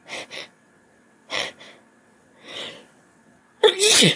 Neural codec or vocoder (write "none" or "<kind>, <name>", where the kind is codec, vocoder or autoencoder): vocoder, WaveNeXt